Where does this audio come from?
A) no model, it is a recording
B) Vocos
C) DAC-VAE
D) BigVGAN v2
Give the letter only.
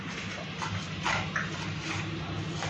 A